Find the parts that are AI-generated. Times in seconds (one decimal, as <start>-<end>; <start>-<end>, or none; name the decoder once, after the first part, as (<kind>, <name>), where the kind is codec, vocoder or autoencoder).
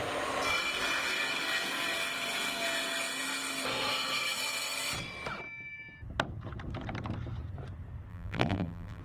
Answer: 8.1-9.0 (vocoder, BigVGAN v2)